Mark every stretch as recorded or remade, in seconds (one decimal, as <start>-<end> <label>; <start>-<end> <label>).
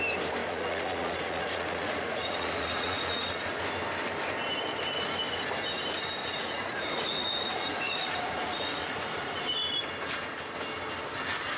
0.0-0.4 recorded; 0.4-3.6 remade; 3.6-6.2 recorded; 6.2-9.4 remade; 9.4-11.6 recorded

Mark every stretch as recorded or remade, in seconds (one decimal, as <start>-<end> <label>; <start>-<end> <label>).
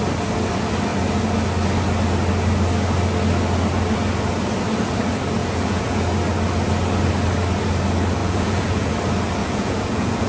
0.0-5.4 recorded; 5.4-6.0 remade; 6.0-8.2 recorded; 8.2-8.9 remade; 8.9-9.4 recorded; 9.4-10.3 remade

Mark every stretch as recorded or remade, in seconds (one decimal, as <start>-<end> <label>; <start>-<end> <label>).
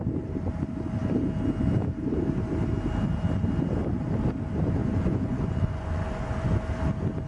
0.0-4.8 recorded; 4.8-6.6 remade; 6.6-7.3 recorded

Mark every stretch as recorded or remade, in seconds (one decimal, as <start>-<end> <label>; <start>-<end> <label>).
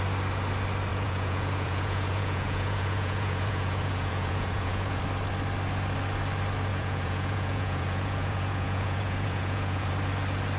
0.0-0.9 recorded; 0.9-5.0 remade; 5.0-6.7 recorded; 6.7-9.9 remade; 9.9-10.6 recorded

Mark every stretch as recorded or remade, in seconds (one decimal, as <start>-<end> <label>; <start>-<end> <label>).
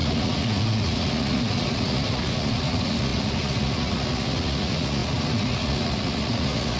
0.0-6.8 remade